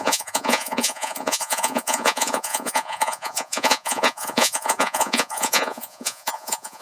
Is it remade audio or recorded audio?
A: remade